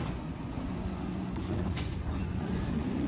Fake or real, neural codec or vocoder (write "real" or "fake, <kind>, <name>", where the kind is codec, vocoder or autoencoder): fake, vocoder, Vocos